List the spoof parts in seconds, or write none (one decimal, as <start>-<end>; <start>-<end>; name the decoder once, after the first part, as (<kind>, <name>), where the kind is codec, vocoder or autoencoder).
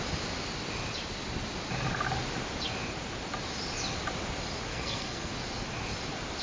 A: 4.7-5.3 (codec, SNAC)